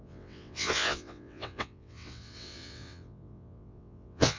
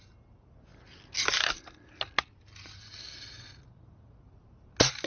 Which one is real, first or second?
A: second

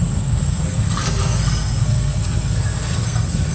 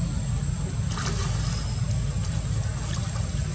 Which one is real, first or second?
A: second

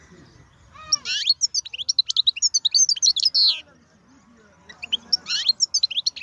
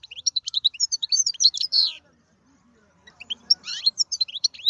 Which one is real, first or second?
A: first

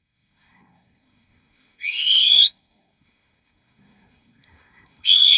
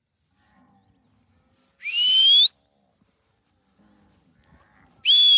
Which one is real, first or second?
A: second